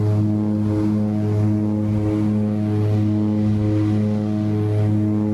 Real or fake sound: real